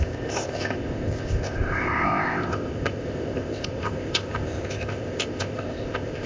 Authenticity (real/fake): fake